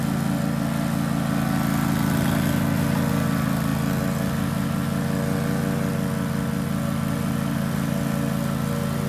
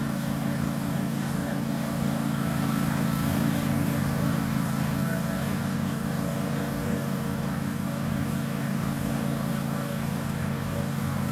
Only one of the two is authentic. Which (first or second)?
first